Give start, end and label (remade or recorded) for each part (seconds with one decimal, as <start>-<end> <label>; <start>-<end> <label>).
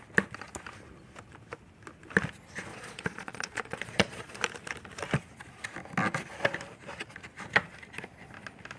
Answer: 0.0-2.7 recorded; 2.7-4.4 remade; 4.4-8.8 recorded